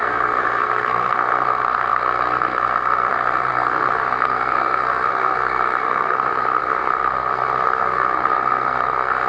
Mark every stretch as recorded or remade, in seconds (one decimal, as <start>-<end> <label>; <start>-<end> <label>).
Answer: 0.0-9.3 remade